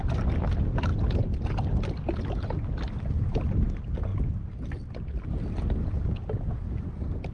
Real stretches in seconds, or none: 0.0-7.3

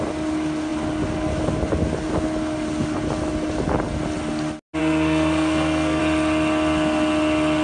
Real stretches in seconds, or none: 0.0-4.8; 6.0-7.6